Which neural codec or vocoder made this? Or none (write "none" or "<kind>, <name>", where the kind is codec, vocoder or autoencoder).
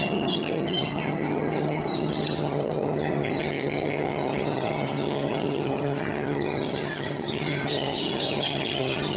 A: vocoder, HiFi-GAN